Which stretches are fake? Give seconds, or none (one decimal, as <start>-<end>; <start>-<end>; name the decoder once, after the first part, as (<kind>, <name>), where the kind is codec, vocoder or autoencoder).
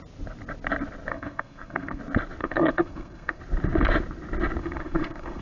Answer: 1.1-2.0 (codec, SNAC); 2.4-3.4; 4.6-5.4